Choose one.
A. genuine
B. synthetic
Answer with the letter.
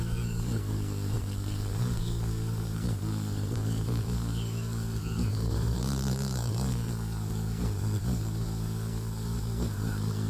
B